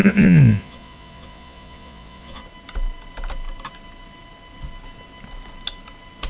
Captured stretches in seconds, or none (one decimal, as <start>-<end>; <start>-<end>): 2.4-6.3